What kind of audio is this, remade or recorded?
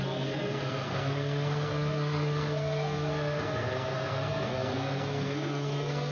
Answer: remade